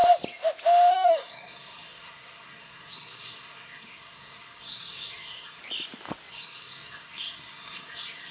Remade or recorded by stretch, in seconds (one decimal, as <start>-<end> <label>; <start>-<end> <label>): 0.0-0.9 recorded; 0.9-5.6 remade; 5.6-6.3 recorded; 6.3-8.3 remade